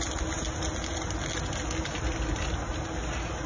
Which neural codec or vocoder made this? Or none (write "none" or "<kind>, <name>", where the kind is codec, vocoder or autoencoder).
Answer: none